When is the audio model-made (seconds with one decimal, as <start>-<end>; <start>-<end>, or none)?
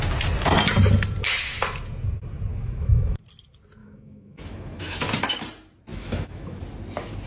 2.5-3.2; 3.8-5.0; 5.9-6.6